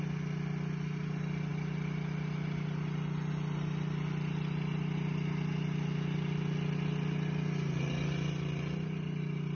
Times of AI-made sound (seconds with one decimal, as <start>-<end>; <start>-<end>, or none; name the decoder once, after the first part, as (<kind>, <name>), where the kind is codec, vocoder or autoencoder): none